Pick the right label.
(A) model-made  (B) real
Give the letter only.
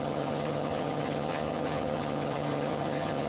A